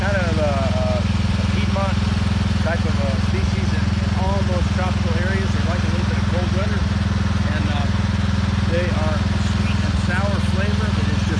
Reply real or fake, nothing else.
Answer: real